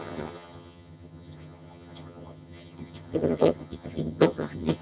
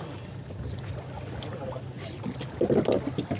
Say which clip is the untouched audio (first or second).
second